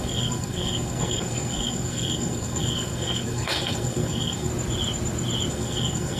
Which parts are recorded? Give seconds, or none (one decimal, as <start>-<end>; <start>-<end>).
4.5-5.5